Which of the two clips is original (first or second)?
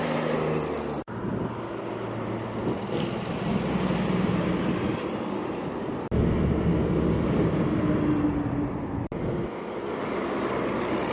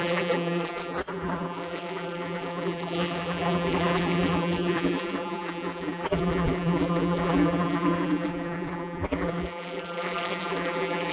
first